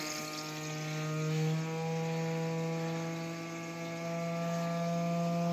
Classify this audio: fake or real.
real